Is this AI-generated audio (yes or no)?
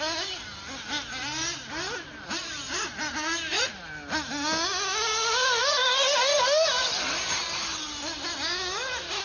no